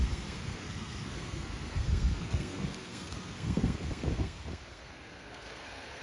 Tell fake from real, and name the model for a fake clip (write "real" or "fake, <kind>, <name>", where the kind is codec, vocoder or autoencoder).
fake, codec, SNAC